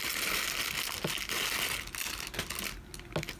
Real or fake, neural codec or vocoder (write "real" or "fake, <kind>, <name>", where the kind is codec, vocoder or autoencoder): real